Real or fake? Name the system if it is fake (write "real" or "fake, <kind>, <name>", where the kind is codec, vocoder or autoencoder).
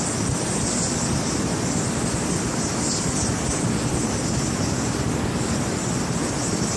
real